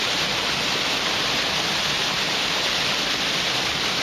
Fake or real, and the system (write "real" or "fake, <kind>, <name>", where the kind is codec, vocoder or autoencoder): real